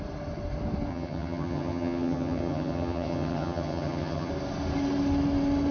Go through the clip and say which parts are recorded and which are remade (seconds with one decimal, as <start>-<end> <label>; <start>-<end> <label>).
0.0-0.9 recorded; 0.9-4.3 remade; 4.3-5.7 recorded